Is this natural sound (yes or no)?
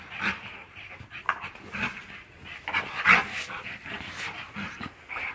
yes